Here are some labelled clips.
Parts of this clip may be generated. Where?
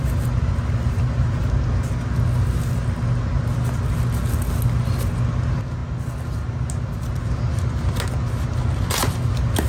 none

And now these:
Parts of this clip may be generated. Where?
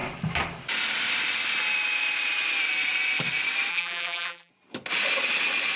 3.7-4.5 (vocoder, BigVGAN v2)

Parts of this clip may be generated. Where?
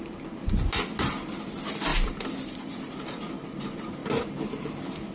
1.9-2.8 (vocoder, BigVGAN v2)